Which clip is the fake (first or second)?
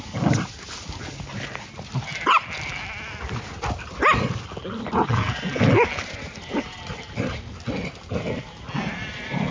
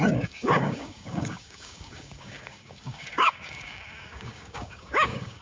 second